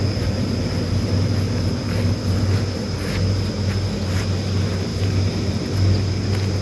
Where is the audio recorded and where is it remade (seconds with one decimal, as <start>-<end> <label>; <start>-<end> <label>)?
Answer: 0.0-4.9 recorded; 4.9-5.5 remade; 5.5-6.6 recorded